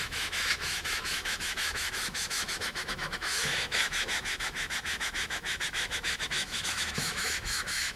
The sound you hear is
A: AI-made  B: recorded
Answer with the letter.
A